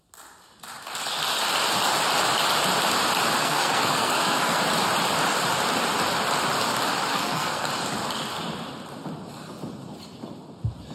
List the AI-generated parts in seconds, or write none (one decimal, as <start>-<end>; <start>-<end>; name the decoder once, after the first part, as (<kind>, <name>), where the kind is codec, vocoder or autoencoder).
3.4-4.6 (codec, SNAC); 7.1-7.7